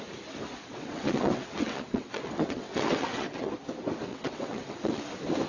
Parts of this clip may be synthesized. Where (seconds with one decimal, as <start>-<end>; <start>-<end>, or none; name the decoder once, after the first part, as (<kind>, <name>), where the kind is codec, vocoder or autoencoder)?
0.7-3.5 (vocoder, WaveNeXt); 4.1-5.0